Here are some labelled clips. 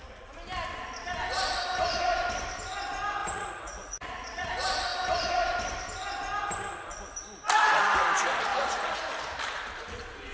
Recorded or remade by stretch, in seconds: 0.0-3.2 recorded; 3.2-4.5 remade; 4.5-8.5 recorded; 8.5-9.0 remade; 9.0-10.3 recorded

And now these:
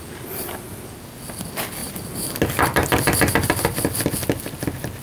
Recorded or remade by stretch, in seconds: 0.0-5.0 recorded

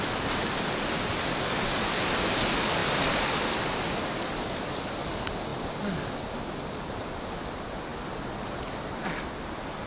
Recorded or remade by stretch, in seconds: 0.0-9.9 recorded

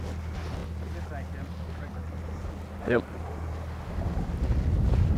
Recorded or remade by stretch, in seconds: 0.0-5.2 recorded

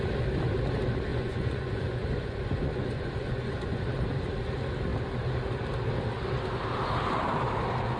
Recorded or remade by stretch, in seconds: 0.0-1.1 recorded; 1.1-3.8 remade; 3.8-8.0 recorded

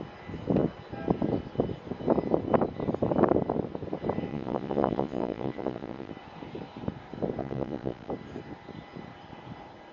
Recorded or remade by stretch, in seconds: 0.0-4.3 recorded; 4.3-6.1 remade; 6.1-7.4 recorded; 7.4-8.1 remade; 8.1-9.9 recorded

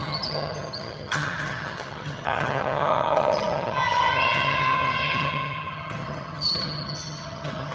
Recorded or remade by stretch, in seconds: 0.0-7.7 remade

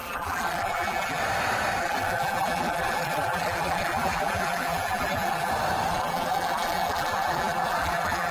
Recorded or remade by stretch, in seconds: 0.0-1.2 remade; 1.2-1.8 recorded; 1.8-5.5 remade; 5.5-5.9 recorded; 5.9-8.3 remade